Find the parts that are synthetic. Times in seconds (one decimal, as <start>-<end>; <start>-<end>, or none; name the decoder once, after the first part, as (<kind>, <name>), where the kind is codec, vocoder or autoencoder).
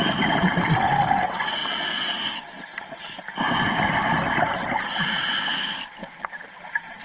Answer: 6.0-7.0 (vocoder, Vocos)